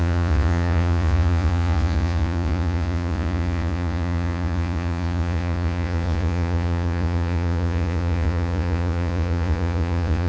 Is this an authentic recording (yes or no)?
no